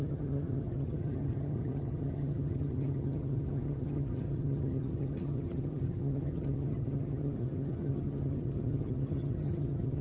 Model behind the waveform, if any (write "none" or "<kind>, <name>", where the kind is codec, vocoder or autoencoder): vocoder, HiFi-GAN